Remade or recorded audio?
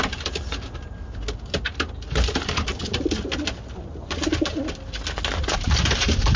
recorded